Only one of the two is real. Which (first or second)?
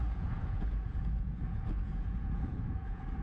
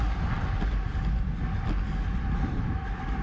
second